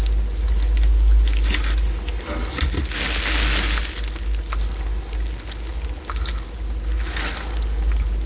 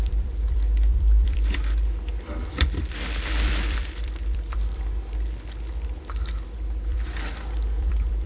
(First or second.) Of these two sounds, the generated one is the second